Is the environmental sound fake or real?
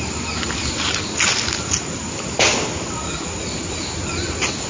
real